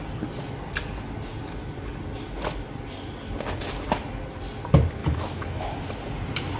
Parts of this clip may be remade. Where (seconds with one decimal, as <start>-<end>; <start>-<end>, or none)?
5.0-5.8